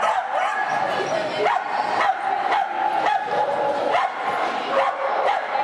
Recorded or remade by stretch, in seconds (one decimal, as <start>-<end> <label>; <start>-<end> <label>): 0.0-5.6 recorded